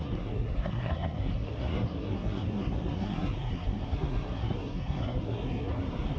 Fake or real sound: fake